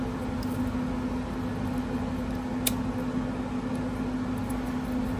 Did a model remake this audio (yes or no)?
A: no